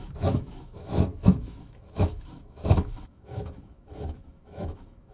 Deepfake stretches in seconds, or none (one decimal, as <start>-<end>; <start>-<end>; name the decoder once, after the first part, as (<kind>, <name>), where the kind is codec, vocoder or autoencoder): 0.0-5.1 (autoencoder, DAC-VAE)